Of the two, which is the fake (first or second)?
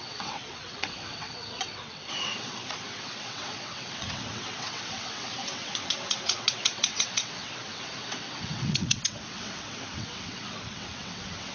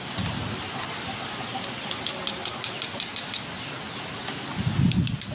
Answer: first